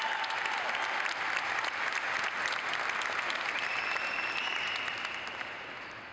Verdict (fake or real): real